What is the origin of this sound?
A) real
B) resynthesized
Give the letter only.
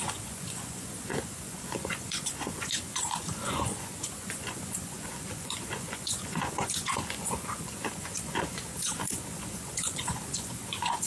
B